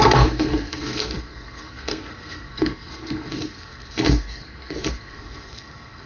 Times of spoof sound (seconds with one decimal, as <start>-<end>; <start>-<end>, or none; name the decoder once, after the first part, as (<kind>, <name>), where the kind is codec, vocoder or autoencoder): 0.0-6.1 (codec, SNAC)